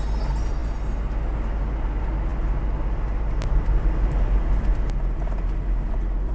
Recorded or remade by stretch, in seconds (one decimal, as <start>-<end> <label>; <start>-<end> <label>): 0.0-6.3 recorded